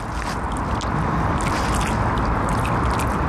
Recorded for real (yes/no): yes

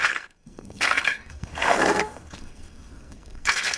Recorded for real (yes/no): no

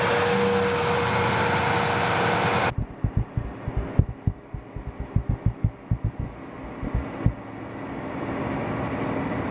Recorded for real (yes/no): yes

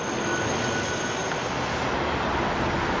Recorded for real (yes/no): yes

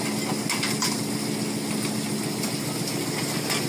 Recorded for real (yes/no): yes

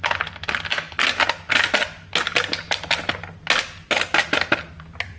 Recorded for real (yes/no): yes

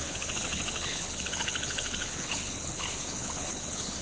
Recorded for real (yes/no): no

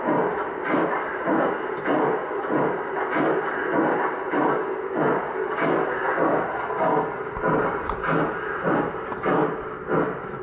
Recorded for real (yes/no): yes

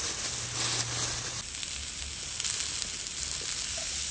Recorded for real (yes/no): yes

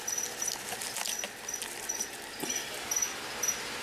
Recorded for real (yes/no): yes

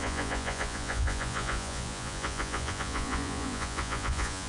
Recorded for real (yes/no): no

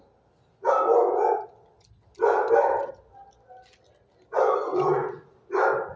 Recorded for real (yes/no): yes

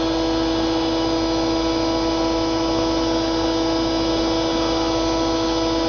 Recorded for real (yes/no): yes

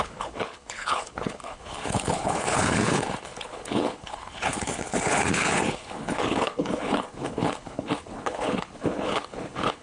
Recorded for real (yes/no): no